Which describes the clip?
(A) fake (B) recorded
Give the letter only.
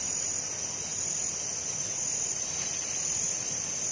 B